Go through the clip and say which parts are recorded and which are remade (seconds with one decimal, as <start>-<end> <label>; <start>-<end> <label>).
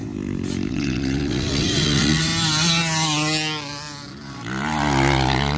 0.0-0.7 recorded; 0.7-2.3 remade; 2.3-5.6 recorded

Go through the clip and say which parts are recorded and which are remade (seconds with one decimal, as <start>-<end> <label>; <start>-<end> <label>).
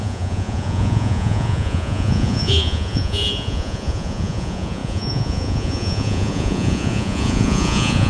0.0-8.1 remade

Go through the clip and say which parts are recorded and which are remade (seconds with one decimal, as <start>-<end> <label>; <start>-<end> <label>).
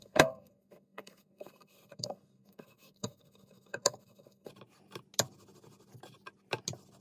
0.0-4.5 remade; 4.5-7.0 recorded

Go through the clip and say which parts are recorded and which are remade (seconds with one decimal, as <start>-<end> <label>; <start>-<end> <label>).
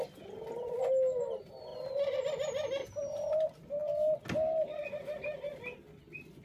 0.0-6.4 recorded